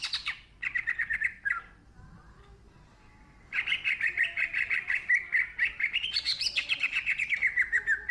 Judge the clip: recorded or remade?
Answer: recorded